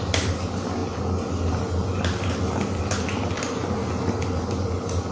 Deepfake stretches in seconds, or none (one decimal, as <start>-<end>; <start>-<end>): none